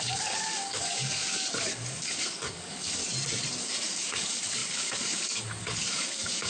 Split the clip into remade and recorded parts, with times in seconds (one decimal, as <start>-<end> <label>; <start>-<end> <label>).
0.0-3.0 remade; 3.0-3.6 recorded; 3.6-6.5 remade